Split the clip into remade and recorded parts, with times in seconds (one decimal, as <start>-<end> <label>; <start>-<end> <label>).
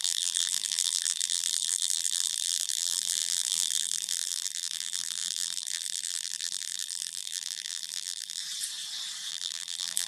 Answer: 0.0-8.4 remade; 8.4-9.3 recorded; 9.3-10.1 remade